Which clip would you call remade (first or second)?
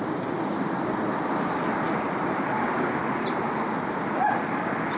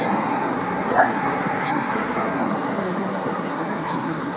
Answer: second